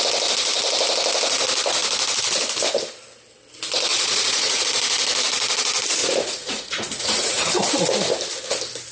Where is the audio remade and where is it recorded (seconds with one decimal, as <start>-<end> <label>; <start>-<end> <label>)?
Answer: 0.0-3.9 recorded; 3.9-4.6 remade; 4.6-6.0 recorded; 6.0-7.6 remade; 7.6-8.9 recorded